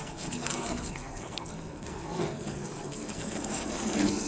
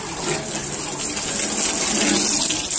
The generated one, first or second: first